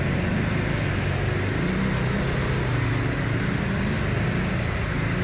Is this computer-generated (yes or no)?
no